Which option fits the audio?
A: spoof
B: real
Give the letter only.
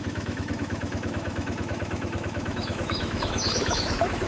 A